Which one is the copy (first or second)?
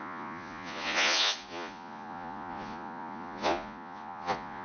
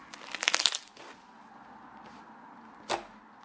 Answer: first